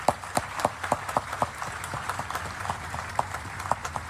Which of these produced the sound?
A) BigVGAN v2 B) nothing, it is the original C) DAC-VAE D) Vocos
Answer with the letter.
A